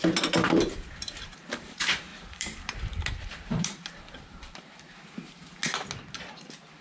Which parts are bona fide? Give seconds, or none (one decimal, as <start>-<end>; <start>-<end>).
5.6-6.8